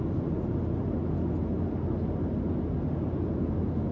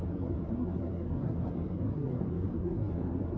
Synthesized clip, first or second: second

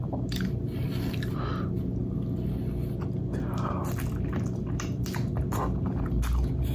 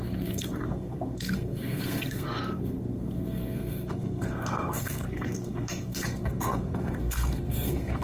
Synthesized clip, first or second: second